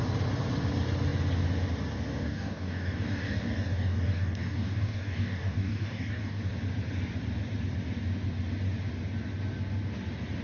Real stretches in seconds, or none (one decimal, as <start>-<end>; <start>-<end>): 0.0-2.1; 6.4-10.4